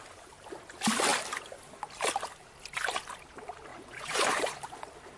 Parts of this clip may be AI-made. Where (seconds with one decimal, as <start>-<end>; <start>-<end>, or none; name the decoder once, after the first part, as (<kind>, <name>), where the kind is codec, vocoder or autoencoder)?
3.7-4.6 (vocoder, Vocos)